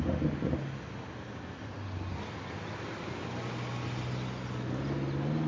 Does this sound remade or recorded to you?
recorded